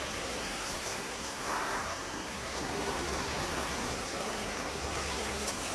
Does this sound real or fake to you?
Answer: fake